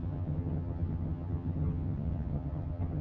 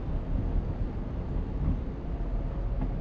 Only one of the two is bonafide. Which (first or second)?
second